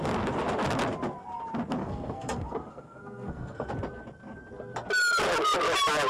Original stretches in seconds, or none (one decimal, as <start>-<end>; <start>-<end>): 0.0-1.8; 3.7-6.1